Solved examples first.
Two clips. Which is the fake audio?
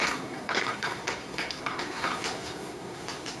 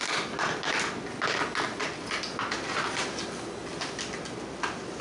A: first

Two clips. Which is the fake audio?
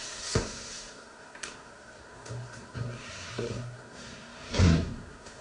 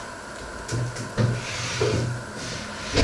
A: first